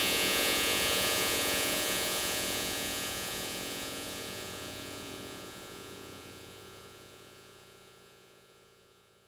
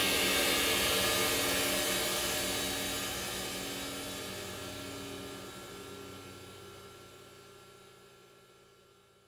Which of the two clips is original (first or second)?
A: second